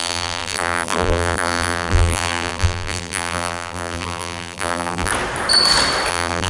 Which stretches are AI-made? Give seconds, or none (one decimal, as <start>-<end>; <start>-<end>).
0.0-5.1; 6.1-6.5